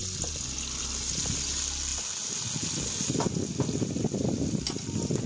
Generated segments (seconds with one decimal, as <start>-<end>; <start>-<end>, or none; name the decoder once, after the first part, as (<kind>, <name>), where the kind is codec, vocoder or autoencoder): none